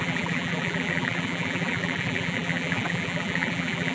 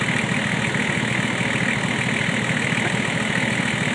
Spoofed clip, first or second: first